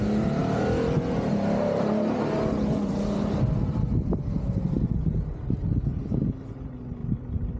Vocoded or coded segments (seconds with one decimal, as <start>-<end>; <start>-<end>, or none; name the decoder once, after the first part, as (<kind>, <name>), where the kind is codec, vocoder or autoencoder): 7.0-7.6 (vocoder, BigVGAN v2)